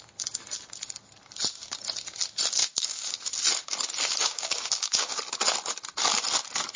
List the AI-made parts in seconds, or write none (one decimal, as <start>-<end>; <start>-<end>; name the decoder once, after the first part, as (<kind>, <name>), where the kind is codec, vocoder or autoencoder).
2.6-3.3 (codec, DAC); 4.2-5.2